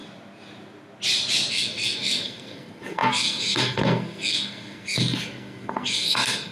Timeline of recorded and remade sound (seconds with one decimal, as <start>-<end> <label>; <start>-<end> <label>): 0.0-1.5 recorded; 1.5-6.5 remade